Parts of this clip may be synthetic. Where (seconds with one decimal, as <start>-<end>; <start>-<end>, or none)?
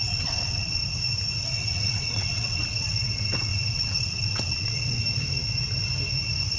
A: 0.0-0.8; 1.4-5.0